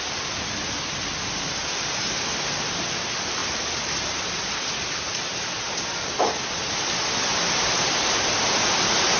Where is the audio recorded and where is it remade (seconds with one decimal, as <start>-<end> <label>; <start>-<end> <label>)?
0.0-3.4 recorded; 3.4-6.4 remade; 6.4-7.3 recorded; 7.3-9.2 remade